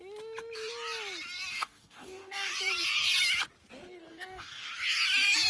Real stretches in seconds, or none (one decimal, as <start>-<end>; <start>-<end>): 0.0-1.5; 2.5-4.1; 4.7-5.5

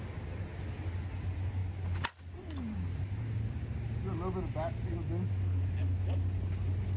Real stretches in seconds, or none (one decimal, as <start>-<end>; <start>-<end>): 0.0-7.0

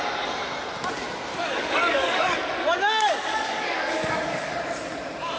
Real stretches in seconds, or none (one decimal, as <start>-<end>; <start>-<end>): 0.0-1.3; 4.5-5.4

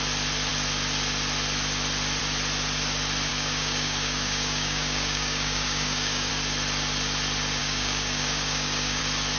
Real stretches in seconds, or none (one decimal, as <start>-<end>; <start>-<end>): 0.0-3.3; 6.3-7.6; 9.0-9.4